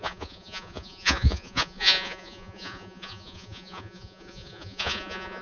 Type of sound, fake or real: fake